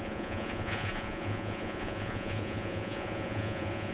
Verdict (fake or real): fake